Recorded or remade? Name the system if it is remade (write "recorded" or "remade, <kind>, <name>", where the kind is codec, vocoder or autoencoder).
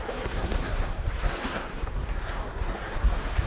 remade, codec, SNAC